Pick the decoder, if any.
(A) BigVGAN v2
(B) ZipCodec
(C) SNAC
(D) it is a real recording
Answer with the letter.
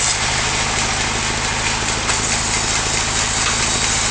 D